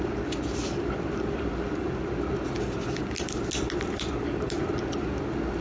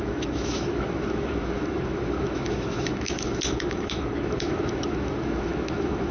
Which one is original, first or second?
first